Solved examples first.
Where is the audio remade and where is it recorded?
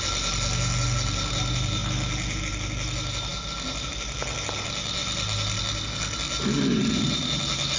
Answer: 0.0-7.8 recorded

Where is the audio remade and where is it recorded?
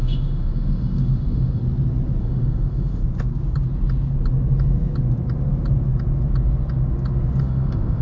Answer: 0.0-1.6 remade; 1.6-2.2 recorded; 2.2-3.0 remade; 3.0-7.4 recorded; 7.4-8.0 remade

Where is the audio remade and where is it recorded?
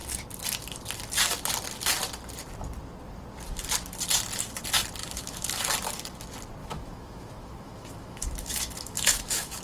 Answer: 0.0-5.0 recorded; 5.0-5.6 remade; 5.6-6.6 recorded; 6.6-9.6 remade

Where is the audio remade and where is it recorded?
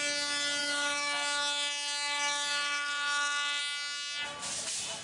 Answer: 0.0-0.6 recorded; 0.6-3.6 remade; 3.6-5.0 recorded